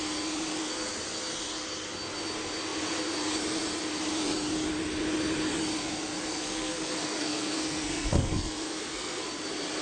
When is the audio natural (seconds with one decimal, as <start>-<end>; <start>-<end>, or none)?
0.0-6.3; 9.2-9.8